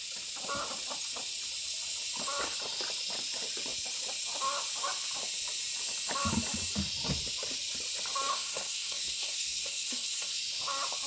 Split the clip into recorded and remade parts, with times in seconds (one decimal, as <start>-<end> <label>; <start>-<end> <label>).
0.0-8.3 recorded; 8.3-10.4 remade; 10.4-11.1 recorded